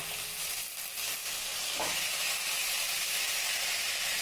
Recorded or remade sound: recorded